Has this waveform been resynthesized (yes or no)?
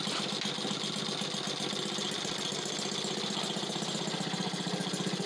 no